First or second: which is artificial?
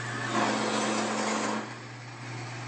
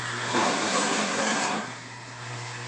second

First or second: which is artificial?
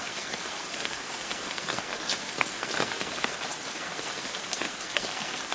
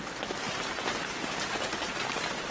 first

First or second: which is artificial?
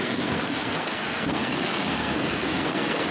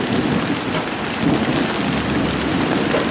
first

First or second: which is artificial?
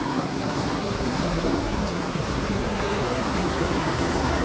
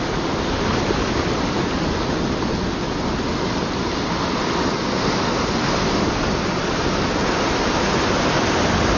first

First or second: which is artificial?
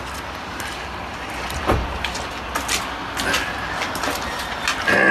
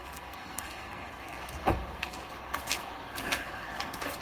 second